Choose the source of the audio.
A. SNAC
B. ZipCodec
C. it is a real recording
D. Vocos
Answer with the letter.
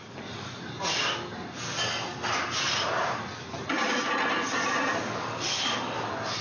C